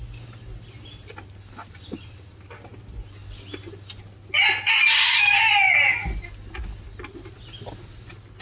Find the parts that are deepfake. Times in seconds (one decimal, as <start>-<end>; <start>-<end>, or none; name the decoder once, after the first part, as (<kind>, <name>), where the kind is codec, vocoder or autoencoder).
none